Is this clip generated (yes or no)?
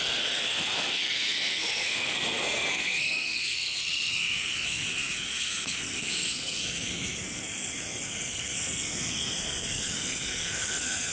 yes